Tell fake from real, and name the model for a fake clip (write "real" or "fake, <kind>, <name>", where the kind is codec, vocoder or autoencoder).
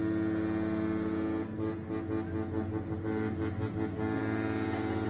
real